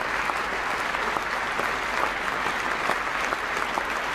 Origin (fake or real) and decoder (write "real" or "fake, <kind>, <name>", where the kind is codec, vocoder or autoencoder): real